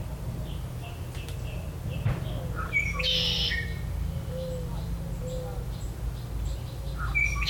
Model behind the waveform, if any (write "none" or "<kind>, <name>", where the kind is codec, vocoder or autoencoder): none